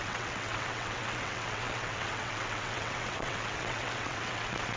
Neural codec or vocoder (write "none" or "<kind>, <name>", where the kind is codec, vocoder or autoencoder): vocoder, WaveNeXt